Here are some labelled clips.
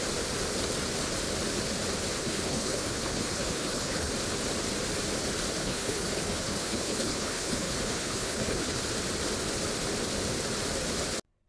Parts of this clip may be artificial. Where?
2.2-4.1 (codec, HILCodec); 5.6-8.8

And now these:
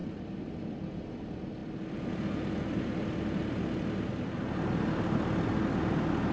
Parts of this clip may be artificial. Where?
none

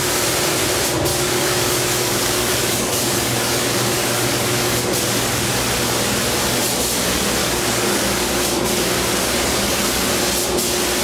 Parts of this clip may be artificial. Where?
1.1-5.5 (codec, DAC); 7.4-10.1

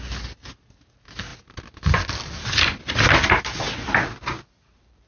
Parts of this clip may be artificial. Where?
none

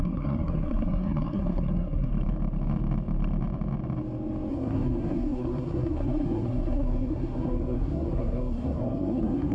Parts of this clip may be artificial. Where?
0.0-2.1 (codec, SNAC); 4.5-9.5

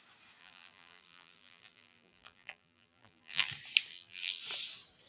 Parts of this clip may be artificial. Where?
0.4-3.5 (vocoder, BigVGAN v2); 3.9-4.4